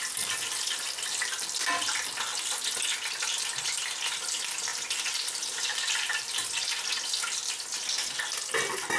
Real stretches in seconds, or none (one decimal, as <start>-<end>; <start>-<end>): 0.0-4.7; 6.3-9.0